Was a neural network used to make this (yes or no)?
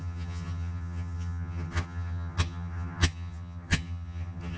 yes